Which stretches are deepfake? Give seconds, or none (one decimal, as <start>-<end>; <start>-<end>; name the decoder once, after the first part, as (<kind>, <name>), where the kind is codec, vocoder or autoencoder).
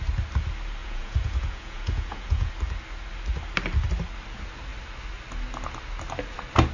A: 0.8-2.5 (vocoder, Vocos)